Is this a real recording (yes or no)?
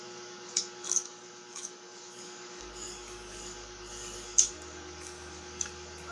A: no